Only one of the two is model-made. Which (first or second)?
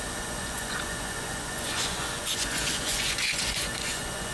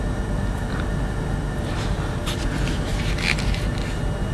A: first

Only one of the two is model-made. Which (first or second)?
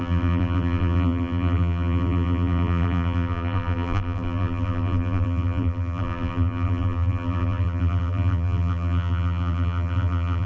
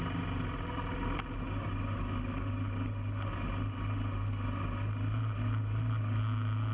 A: first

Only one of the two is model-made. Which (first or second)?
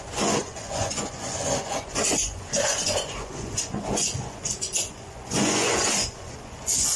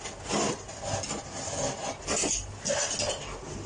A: first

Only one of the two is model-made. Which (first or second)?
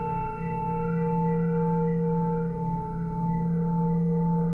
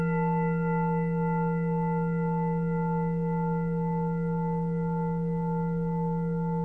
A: first